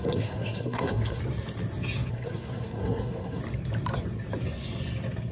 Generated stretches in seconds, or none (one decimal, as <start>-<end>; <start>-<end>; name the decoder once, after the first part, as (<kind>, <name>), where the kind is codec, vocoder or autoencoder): 0.0-1.2 (codec, SNAC); 2.1-3.4